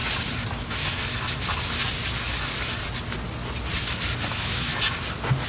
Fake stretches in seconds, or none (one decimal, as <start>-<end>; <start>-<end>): 0.6-1.0; 4.3-4.7